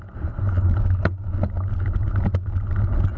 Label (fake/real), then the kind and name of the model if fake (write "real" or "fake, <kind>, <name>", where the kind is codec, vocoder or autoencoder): real